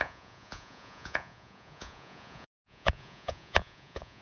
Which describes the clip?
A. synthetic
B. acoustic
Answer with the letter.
A